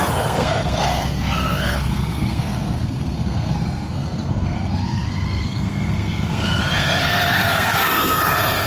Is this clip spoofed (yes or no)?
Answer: yes